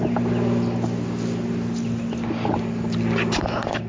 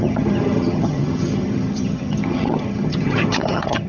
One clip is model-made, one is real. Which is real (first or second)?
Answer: first